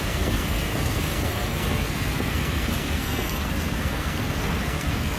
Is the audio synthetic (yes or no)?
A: yes